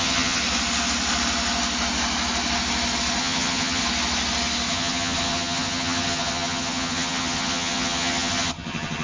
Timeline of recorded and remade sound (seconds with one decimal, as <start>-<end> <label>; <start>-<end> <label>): 0.0-0.4 remade; 0.4-3.2 recorded; 3.2-3.8 remade; 3.8-4.7 recorded; 4.7-9.0 remade